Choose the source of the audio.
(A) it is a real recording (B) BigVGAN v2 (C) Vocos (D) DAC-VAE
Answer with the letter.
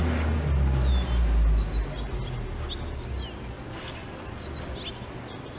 A